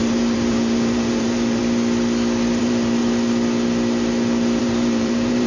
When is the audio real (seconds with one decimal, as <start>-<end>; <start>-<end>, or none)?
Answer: 1.6-2.6; 3.0-4.6